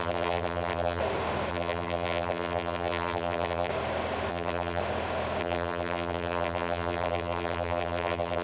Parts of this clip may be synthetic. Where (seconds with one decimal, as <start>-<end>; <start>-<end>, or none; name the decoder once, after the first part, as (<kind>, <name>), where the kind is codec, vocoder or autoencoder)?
0.0-1.0 (vocoder, BigVGAN v2); 1.5-3.7; 4.3-4.8; 5.4-8.4